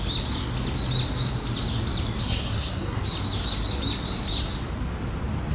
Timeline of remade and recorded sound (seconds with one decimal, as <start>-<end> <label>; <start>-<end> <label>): 0.0-2.2 recorded; 2.2-3.0 remade; 3.0-5.5 recorded